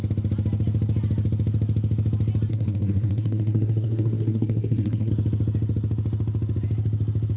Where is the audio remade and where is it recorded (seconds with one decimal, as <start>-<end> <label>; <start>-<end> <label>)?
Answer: 0.0-2.5 recorded; 2.5-5.1 remade; 5.1-7.4 recorded